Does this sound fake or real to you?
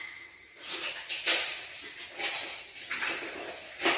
real